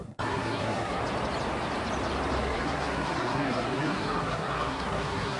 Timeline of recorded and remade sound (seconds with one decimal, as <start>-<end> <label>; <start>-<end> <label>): 0.0-1.0 remade; 1.0-2.4 recorded; 2.4-5.4 remade